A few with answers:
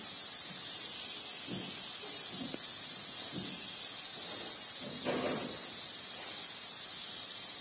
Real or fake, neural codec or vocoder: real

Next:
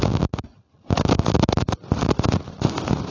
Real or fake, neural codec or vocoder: real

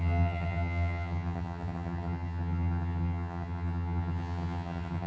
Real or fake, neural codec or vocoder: fake, vocoder, HiFi-GAN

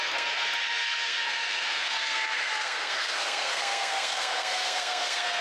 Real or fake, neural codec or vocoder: fake, codec, SNAC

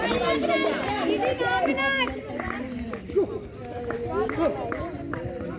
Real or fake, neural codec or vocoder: real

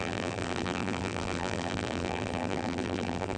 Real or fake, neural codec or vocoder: fake, vocoder, BigVGAN v2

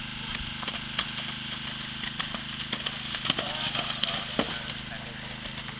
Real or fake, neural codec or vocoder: real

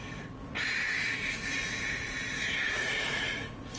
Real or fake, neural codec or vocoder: fake, vocoder, Vocos